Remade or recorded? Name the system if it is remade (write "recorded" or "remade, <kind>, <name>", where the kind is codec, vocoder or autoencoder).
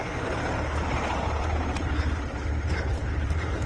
remade, vocoder, BigVGAN v2